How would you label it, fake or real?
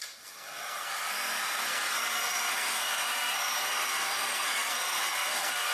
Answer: fake